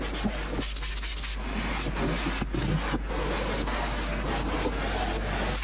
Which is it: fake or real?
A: real